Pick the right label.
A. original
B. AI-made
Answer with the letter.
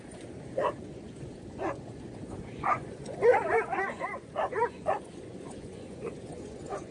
B